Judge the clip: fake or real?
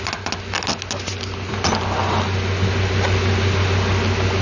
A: real